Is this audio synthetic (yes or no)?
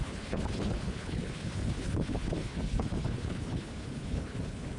yes